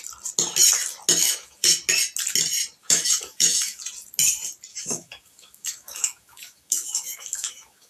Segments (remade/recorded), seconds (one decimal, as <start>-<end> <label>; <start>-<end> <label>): 0.0-1.2 recorded; 1.2-1.7 remade; 1.7-2.8 recorded; 2.8-3.8 remade; 3.8-4.7 recorded; 4.7-7.9 remade